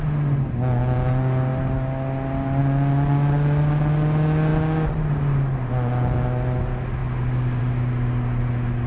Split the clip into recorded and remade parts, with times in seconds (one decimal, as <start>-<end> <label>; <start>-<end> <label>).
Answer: 0.0-8.9 recorded